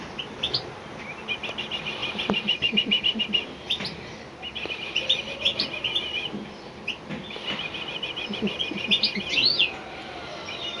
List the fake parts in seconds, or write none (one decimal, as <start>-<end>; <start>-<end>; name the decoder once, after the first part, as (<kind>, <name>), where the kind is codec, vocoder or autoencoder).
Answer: 2.0-3.2 (vocoder, BigVGAN v2); 5.5-7.7